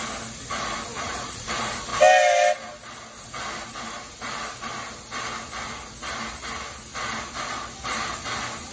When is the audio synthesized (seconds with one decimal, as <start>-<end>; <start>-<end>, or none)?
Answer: 0.9-1.5